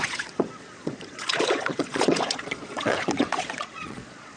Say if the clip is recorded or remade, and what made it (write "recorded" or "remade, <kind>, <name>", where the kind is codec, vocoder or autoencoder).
remade, vocoder, Vocos